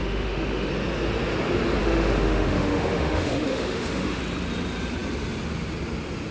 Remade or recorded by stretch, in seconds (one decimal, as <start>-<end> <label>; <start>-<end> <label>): 0.0-0.7 remade; 0.7-1.8 recorded; 1.8-4.2 remade; 4.2-6.3 recorded